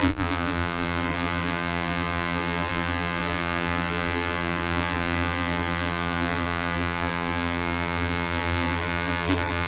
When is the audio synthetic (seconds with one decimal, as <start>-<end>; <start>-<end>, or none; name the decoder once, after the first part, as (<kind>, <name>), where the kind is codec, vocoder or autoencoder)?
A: 0.0-9.7 (vocoder, BigVGAN v2)